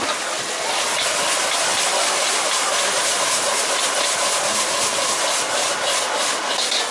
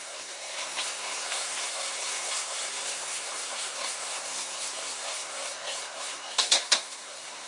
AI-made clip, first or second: second